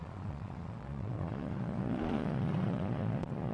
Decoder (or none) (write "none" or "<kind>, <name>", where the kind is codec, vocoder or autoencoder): vocoder, Vocos